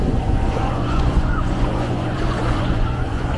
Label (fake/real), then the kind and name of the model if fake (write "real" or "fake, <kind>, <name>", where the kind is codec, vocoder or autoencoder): fake, vocoder, Vocos